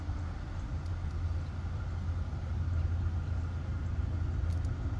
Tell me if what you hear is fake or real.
real